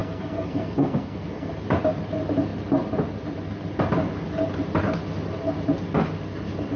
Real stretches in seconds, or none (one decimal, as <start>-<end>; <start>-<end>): 1.5-6.8